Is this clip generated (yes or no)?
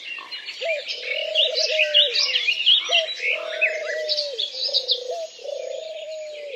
no